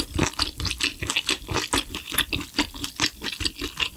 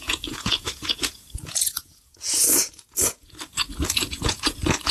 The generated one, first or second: second